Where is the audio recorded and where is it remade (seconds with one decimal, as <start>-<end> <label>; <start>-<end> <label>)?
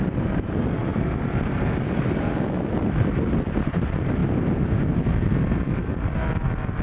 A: 0.0-6.8 recorded